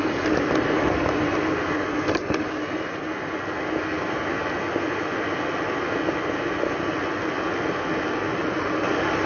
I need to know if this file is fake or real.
real